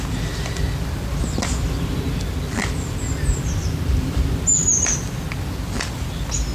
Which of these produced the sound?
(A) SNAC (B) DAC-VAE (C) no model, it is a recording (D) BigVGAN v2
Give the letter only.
C